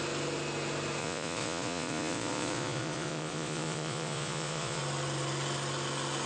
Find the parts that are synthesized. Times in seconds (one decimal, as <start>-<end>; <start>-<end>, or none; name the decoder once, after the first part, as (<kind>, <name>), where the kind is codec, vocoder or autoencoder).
1.0-4.8 (vocoder, Vocos)